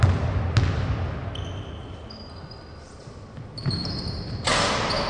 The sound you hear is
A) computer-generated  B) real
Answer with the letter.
B